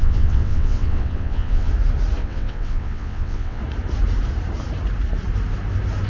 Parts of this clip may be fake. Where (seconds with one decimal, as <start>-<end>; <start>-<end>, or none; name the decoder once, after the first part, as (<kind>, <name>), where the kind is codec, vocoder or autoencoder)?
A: 0.0-1.7 (vocoder, WaveNeXt); 2.2-3.6